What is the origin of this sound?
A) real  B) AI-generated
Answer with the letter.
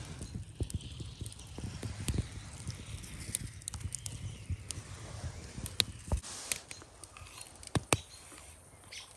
A